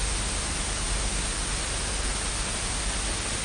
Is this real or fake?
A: real